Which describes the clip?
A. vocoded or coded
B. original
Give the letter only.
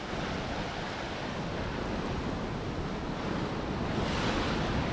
B